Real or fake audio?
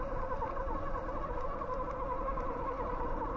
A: real